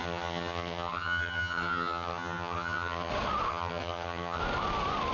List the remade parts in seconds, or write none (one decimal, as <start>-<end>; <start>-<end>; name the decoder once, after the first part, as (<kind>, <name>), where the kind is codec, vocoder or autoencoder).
0.0-3.1 (vocoder, HiFi-GAN); 3.5-4.4